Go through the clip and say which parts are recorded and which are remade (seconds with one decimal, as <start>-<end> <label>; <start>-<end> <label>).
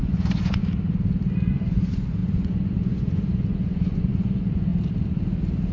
0.0-0.6 remade; 0.6-1.5 recorded; 1.5-4.7 remade; 4.7-5.7 recorded